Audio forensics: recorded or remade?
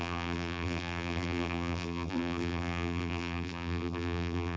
remade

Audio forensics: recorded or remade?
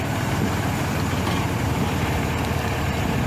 remade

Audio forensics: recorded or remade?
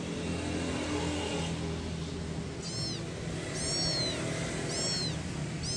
recorded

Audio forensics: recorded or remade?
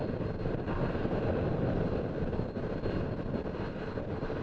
recorded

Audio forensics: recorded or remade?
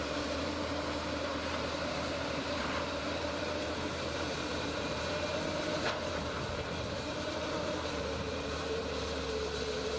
remade